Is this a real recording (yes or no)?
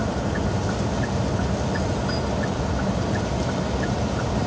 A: yes